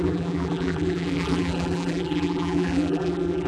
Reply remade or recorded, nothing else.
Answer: remade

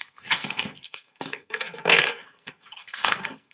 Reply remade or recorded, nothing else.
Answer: remade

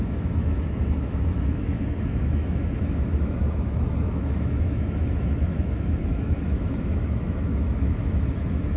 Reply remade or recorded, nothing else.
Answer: remade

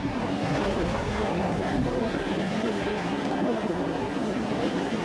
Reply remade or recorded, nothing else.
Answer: remade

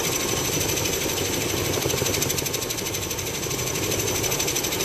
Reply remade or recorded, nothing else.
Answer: remade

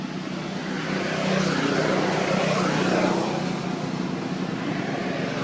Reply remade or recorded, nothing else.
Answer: recorded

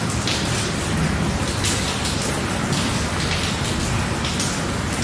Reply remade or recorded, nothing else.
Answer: recorded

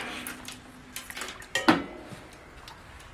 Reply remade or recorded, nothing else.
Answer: recorded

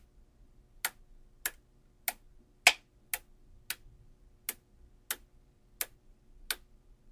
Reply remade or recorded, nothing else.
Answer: recorded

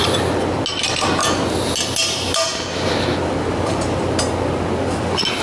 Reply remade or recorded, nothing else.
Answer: recorded